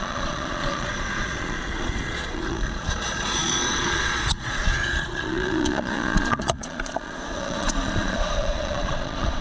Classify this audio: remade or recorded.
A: remade